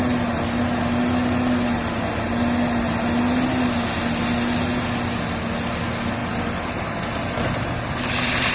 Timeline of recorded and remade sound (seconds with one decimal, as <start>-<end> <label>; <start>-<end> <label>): 0.0-6.2 recorded; 6.2-8.5 remade